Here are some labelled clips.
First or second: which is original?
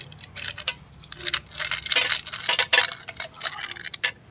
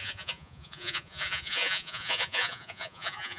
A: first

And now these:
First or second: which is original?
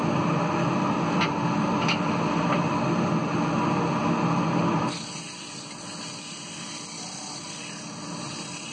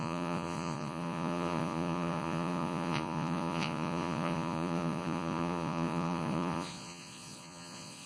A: first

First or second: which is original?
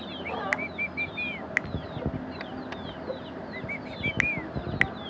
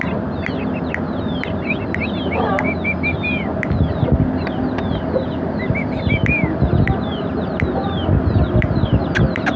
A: first